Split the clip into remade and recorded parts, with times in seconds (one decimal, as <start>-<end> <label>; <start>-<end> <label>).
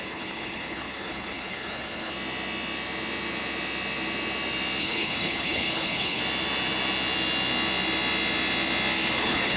0.0-2.1 remade; 2.1-4.8 recorded; 4.8-6.2 remade; 6.2-9.2 recorded; 9.2-9.6 remade